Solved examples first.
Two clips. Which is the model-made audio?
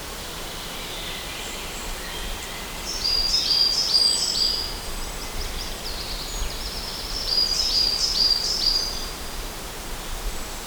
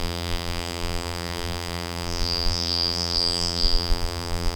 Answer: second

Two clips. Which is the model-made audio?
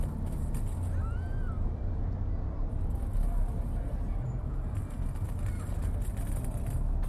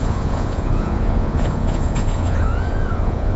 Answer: second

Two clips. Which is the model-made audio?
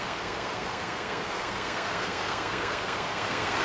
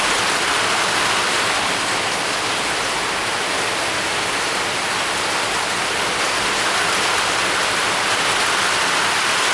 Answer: first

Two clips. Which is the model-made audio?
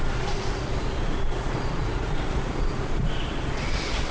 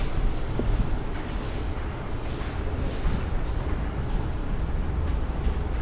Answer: first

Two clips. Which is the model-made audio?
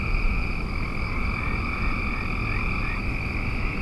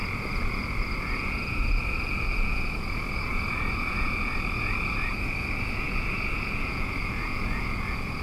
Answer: second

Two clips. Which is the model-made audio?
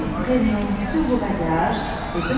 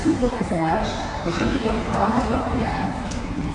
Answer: second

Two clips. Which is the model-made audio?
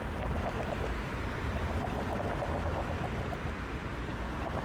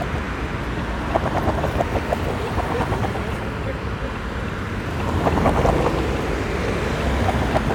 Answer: first